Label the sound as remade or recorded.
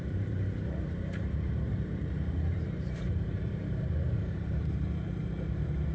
remade